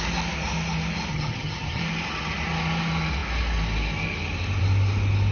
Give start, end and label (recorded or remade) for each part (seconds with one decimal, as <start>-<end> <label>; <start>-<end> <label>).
0.0-1.1 recorded; 1.1-1.8 remade; 1.8-5.3 recorded